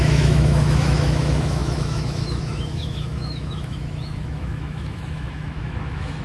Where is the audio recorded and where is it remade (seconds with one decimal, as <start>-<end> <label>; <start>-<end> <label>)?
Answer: 0.0-6.2 remade